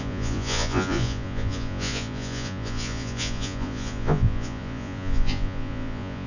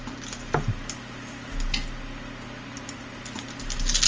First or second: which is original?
second